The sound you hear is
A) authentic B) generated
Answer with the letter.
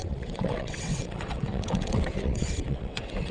B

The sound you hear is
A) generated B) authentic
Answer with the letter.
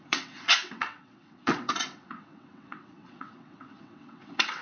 A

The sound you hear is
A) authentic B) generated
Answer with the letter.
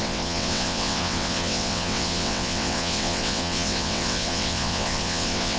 B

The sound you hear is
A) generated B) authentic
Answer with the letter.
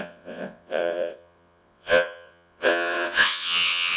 A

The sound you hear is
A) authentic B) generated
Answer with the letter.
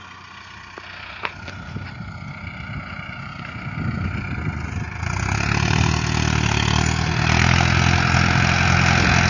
A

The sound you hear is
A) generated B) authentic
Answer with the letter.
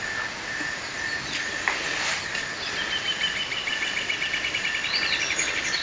B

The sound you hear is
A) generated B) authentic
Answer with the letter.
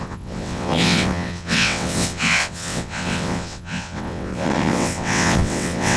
A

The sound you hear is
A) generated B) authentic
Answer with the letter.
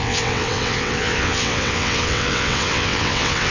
A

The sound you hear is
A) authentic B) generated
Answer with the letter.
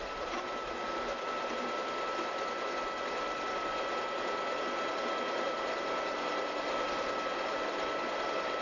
A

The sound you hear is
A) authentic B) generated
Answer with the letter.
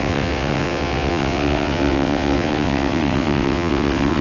B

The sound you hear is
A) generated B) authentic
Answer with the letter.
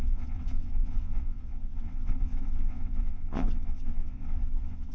A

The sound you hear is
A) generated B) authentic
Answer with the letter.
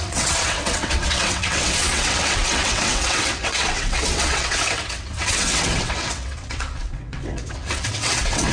A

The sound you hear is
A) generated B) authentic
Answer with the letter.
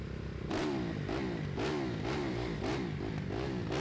B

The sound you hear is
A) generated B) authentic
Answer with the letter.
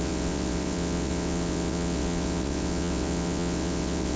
A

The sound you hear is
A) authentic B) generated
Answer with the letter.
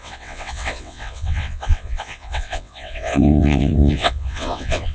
B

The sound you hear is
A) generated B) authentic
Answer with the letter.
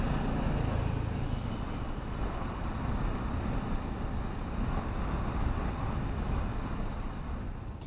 B